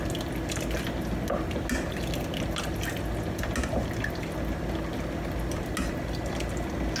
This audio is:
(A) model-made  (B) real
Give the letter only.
B